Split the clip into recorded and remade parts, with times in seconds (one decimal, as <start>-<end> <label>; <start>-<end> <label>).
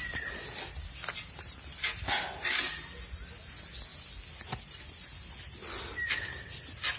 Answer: 0.0-7.0 recorded